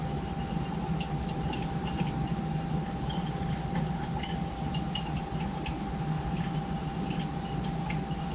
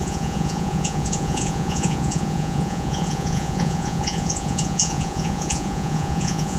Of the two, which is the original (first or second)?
first